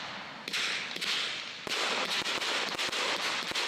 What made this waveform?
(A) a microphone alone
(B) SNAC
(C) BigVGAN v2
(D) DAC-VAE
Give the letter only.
A